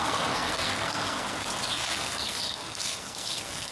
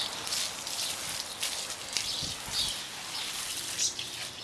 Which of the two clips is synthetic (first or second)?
first